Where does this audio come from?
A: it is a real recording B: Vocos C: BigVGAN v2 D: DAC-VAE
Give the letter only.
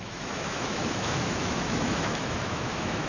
D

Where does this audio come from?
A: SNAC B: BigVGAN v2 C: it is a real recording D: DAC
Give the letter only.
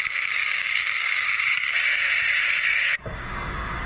D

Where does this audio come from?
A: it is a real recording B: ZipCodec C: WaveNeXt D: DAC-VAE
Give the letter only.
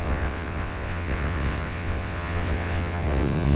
C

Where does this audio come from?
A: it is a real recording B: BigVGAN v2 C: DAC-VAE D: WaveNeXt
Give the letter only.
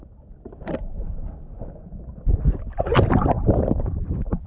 B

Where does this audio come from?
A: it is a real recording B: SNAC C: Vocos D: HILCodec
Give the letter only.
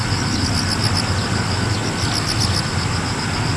A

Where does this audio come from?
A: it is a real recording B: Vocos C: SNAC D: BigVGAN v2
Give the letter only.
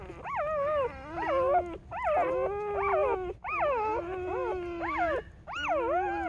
A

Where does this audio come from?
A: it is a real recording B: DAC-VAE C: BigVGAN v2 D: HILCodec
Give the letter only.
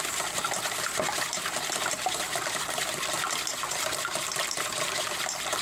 A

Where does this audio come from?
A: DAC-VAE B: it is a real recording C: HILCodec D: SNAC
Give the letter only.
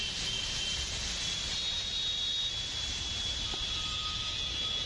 B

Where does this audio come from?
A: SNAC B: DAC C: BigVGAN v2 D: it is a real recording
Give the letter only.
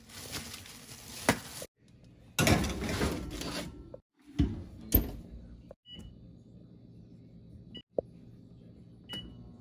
D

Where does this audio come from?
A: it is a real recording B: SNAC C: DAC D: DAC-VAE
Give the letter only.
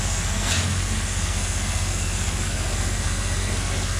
B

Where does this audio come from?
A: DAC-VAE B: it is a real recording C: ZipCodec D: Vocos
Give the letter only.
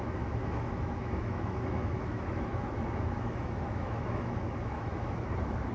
A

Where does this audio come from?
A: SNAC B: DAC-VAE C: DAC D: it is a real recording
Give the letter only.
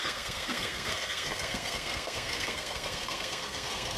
A